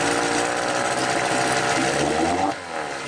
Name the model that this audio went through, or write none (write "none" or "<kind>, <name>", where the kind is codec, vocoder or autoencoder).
none